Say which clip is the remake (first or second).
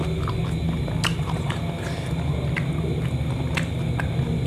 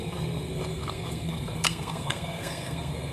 second